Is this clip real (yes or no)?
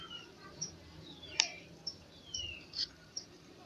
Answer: no